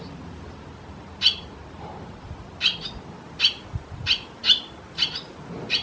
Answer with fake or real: real